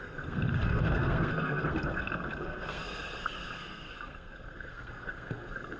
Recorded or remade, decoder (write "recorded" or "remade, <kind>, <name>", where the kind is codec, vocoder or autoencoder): remade, codec, SNAC